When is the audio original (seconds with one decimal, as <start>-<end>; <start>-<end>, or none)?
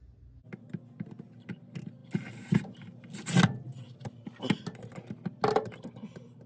0.0-6.5